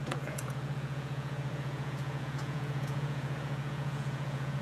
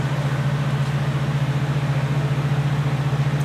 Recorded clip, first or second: second